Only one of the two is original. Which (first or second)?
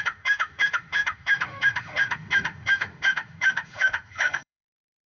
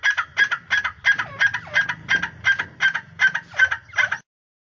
second